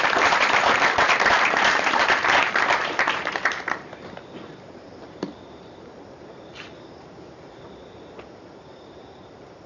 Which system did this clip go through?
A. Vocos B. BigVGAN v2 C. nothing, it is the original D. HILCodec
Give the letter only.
B